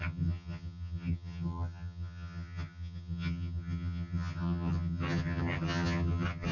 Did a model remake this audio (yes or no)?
yes